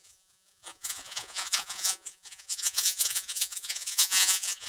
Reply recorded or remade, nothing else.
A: remade